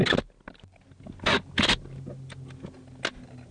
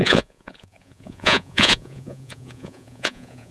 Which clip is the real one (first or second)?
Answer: first